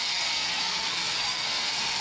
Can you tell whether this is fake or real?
fake